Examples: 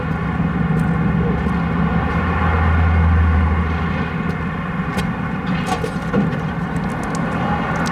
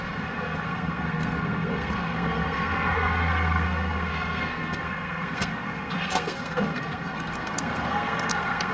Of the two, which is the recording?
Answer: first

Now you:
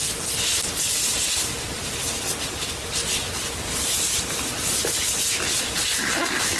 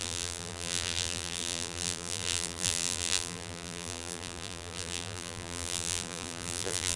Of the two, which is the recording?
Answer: first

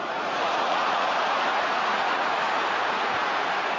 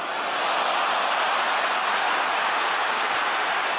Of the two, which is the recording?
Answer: second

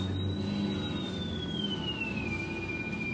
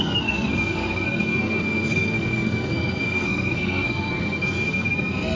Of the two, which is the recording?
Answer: first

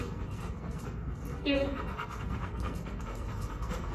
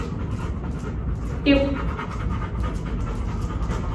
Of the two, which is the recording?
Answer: second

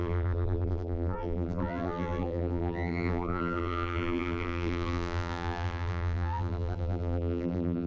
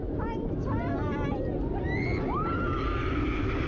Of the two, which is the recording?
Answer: second